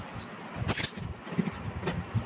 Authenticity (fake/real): real